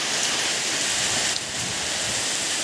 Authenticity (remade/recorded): recorded